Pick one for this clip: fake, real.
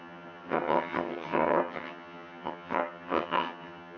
fake